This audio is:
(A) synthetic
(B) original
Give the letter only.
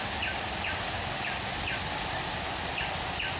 B